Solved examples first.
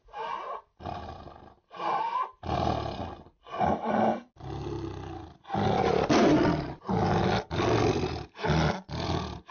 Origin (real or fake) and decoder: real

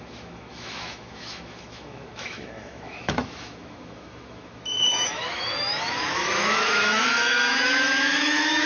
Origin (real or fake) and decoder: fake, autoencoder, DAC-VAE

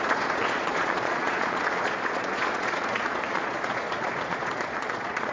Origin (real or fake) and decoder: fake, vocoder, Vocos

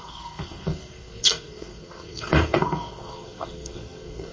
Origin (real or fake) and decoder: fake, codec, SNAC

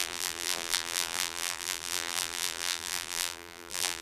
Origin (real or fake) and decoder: fake, vocoder, BigVGAN v2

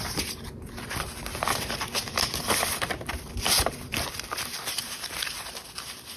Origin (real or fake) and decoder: fake, vocoder, BigVGAN v2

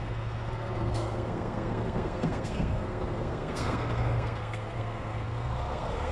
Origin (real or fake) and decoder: fake, codec, SNAC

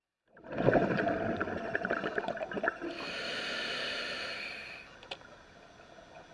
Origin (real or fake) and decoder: real